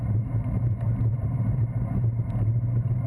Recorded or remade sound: remade